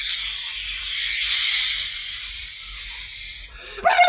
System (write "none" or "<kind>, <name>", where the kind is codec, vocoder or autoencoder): none